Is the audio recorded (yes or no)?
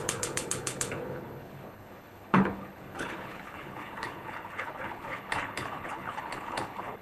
no